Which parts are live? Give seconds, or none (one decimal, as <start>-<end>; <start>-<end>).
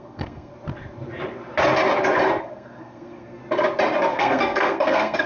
0.5-2.4; 3.4-4.1